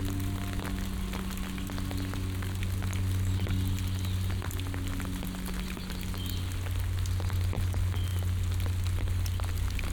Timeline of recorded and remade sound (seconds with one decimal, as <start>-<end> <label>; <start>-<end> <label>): 0.0-9.9 recorded